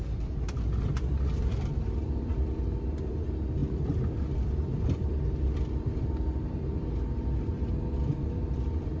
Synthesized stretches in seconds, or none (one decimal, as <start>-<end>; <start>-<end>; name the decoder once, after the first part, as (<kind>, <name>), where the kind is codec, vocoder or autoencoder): none